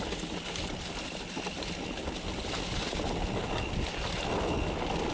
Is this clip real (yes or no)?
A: yes